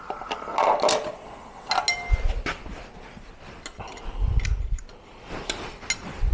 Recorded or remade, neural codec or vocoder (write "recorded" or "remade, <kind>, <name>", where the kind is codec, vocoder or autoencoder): recorded